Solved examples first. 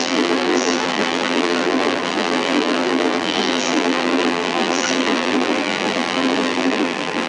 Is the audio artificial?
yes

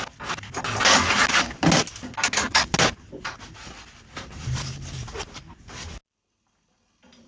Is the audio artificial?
no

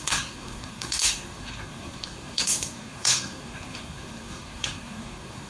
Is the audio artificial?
yes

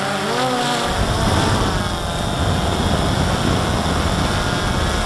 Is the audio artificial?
no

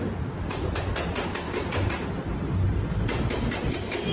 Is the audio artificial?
no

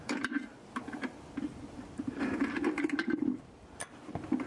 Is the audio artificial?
no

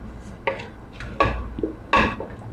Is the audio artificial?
no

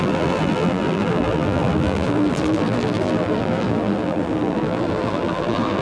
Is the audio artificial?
yes